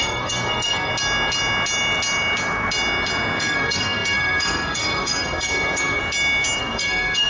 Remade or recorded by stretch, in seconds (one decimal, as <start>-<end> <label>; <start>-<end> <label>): 0.0-0.9 remade; 0.9-3.4 recorded; 3.4-6.0 remade; 6.0-6.6 recorded; 6.6-7.3 remade